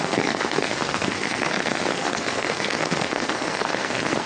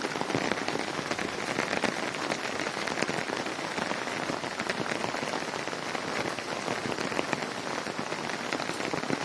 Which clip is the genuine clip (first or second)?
second